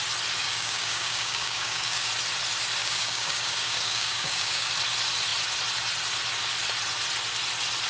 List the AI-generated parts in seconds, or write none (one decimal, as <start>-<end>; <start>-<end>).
0.4-2.1; 2.8-4.7